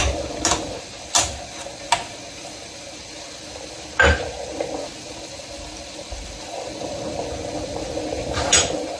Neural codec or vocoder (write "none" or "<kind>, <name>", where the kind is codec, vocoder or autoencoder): none